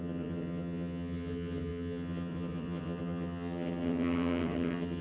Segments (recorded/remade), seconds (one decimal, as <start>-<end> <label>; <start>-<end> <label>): 0.0-5.0 remade